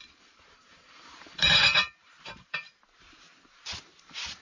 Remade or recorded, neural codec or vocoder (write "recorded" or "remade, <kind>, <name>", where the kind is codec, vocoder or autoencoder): remade, vocoder, BigVGAN v2